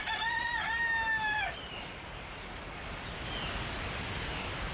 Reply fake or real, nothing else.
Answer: real